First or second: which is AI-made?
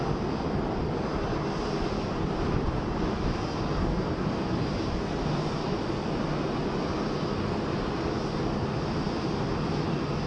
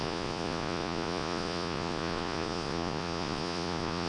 second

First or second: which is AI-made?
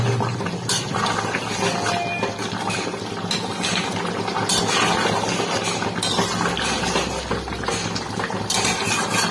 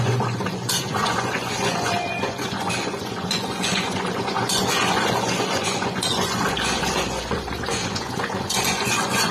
second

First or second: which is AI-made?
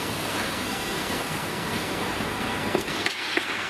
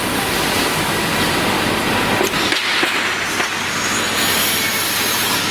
first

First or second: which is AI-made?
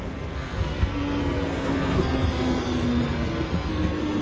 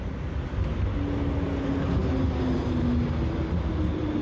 first